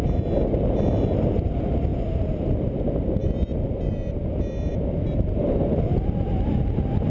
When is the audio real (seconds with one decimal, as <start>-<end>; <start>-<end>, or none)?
0.0-1.9; 2.4-4.7; 5.4-7.1